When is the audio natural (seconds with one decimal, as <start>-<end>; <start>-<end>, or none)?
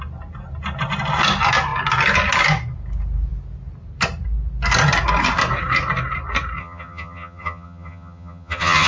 0.0-6.6